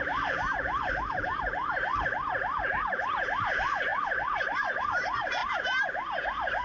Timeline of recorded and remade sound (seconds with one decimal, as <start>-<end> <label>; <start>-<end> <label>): 0.0-1.6 remade; 1.6-2.7 recorded; 2.7-6.6 remade